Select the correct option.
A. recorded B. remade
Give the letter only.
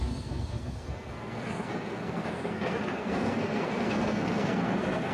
B